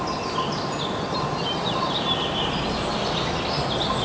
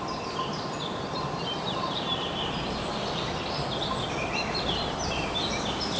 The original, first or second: first